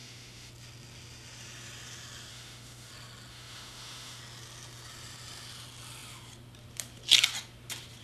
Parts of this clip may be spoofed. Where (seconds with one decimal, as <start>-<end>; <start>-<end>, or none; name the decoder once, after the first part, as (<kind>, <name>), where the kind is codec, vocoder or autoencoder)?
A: 0.0-0.5 (autoencoder, DAC-VAE); 2.3-2.9; 3.3-4.2